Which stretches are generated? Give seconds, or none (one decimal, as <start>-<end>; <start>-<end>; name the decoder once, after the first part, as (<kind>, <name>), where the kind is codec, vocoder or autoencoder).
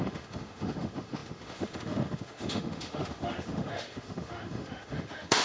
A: 0.0-5.4 (autoencoder, DAC-VAE)